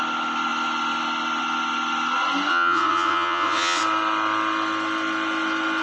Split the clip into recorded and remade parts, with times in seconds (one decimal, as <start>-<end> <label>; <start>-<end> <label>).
0.0-2.5 recorded; 2.5-3.8 remade; 3.8-5.8 recorded